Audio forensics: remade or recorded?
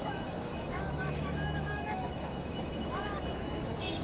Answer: remade